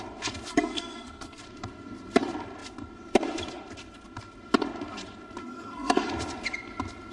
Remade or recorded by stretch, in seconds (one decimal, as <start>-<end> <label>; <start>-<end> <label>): 0.0-0.5 recorded; 0.5-1.4 remade; 1.4-5.4 recorded; 5.4-6.1 remade; 6.1-7.1 recorded